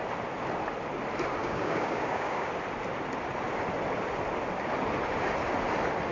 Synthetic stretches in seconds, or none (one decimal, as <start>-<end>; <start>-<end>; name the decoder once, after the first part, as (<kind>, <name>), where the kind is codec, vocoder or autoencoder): 1.4-2.5 (codec, DAC)